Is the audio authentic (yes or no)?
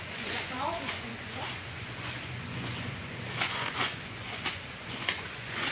no